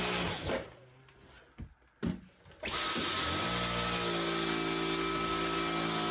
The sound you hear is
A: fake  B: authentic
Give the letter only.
B